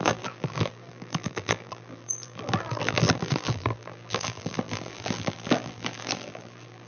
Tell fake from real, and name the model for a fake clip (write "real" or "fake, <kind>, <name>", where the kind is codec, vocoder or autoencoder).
fake, vocoder, BigVGAN v2